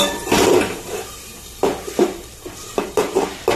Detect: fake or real fake